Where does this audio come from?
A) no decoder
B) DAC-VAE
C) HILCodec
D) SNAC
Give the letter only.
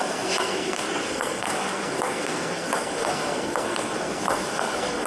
D